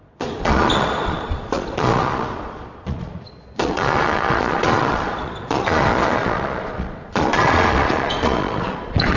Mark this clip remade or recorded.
remade